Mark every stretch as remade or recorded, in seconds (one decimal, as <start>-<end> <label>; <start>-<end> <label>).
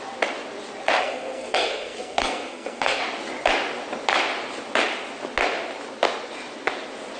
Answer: 0.0-1.0 recorded; 1.0-3.0 remade; 3.0-7.2 recorded